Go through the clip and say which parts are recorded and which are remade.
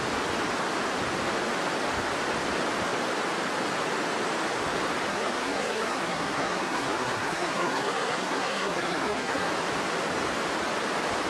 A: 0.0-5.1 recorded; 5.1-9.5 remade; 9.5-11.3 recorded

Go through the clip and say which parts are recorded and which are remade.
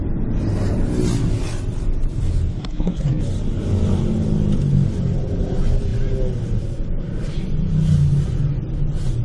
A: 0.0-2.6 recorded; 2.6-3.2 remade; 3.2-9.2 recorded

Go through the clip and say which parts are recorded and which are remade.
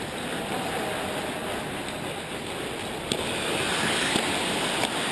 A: 0.0-5.1 recorded